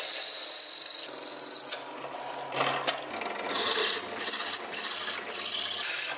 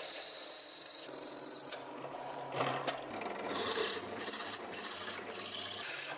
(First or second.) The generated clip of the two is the second